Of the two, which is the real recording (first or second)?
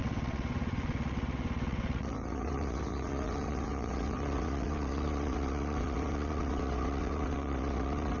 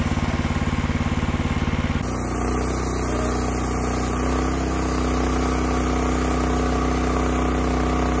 second